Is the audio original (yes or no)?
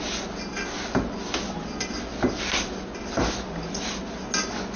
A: yes